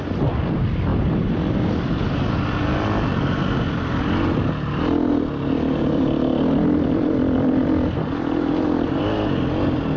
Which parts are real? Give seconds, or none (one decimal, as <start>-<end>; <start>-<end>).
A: 0.0-10.0